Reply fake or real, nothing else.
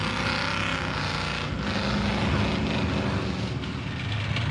real